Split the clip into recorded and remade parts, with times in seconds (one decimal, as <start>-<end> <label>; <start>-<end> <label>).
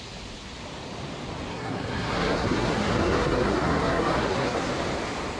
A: 0.0-1.5 recorded; 1.5-4.7 remade; 4.7-5.4 recorded